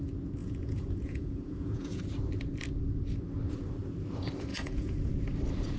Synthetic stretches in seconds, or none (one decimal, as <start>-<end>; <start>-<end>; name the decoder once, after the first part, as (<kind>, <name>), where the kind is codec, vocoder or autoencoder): 0.4-2.0 (vocoder, Vocos); 4.5-5.1